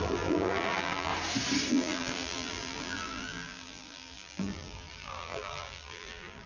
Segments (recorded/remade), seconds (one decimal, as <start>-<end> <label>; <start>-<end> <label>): 0.0-1.1 remade; 1.1-1.7 recorded; 1.7-6.5 remade